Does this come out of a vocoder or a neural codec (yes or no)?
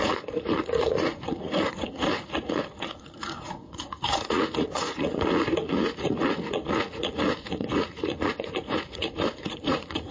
yes